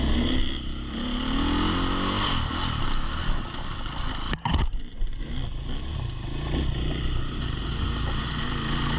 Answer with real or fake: real